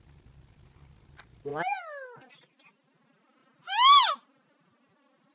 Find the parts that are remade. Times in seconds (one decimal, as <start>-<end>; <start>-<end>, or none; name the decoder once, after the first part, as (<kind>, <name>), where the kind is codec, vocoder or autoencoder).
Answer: none